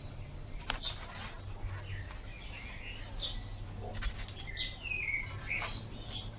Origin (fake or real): real